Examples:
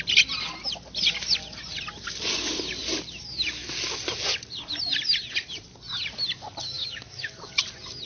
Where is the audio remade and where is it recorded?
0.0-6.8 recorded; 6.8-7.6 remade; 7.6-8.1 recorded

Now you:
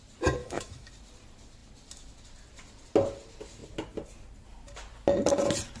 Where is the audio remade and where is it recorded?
0.0-0.4 recorded; 0.4-0.9 remade; 0.9-5.8 recorded